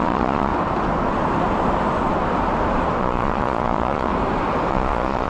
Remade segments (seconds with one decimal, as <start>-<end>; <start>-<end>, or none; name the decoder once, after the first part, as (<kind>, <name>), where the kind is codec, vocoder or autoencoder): 0.0-0.5 (vocoder, Vocos); 3.0-4.1; 4.7-5.3